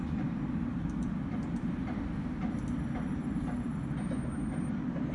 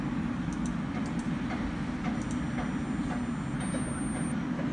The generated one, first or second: first